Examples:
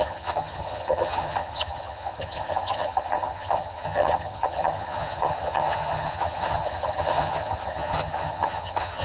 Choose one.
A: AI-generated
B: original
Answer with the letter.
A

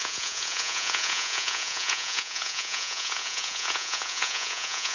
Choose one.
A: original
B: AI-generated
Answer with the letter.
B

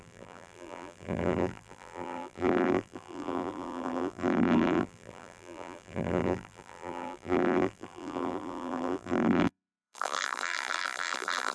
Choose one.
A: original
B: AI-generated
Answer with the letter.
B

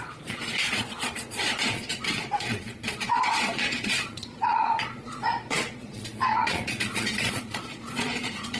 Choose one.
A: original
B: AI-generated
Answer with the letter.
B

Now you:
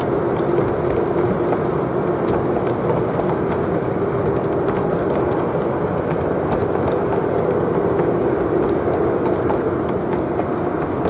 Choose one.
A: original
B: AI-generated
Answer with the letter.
A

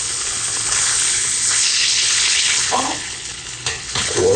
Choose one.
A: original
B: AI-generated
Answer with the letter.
B